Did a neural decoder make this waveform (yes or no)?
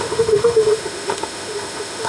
yes